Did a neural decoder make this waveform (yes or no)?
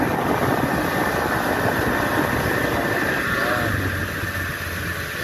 no